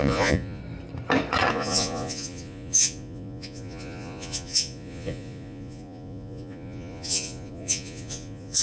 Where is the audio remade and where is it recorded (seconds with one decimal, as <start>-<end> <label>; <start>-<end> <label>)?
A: 0.0-0.6 remade; 0.6-1.5 recorded; 1.5-8.6 remade